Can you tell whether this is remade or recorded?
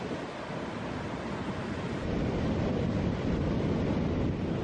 recorded